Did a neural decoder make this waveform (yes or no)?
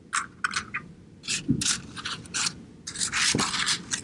no